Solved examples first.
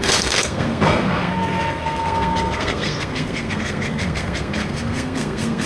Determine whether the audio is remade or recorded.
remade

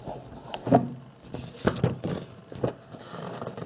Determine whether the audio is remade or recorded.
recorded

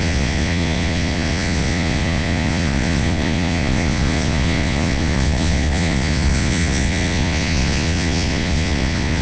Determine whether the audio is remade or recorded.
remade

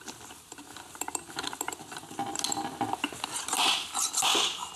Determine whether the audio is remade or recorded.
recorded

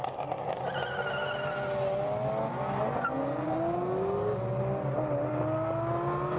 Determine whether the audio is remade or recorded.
recorded